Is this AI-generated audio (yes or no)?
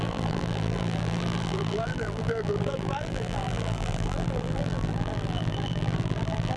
yes